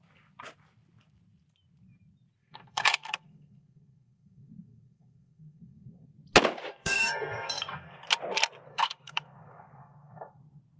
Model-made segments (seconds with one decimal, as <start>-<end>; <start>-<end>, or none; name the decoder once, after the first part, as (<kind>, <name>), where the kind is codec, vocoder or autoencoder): 2.4-6.1 (codec, SNAC); 6.7-8.0; 8.7-10.4